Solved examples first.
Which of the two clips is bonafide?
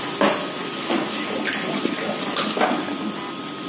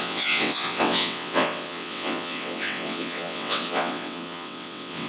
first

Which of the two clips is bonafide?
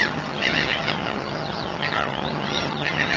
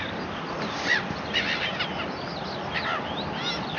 second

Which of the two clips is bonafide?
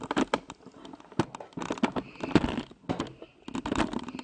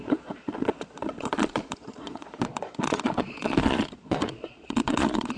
first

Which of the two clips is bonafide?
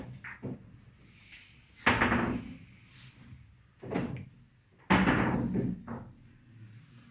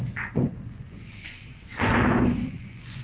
first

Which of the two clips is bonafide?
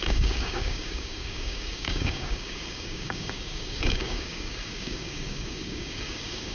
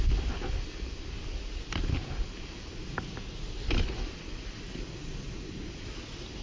second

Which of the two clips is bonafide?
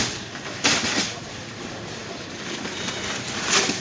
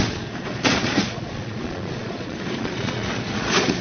first